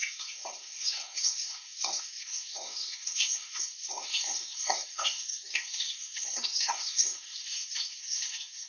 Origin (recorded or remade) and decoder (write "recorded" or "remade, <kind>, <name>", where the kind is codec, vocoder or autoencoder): remade, codec, SNAC